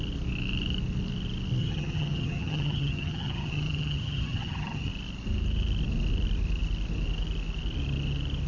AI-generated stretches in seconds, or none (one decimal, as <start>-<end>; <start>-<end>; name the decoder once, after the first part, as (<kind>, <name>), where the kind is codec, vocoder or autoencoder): 1.6-4.9 (vocoder, HiFi-GAN)